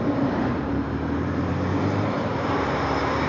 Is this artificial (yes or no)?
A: yes